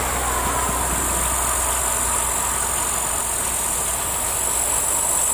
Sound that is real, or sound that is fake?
real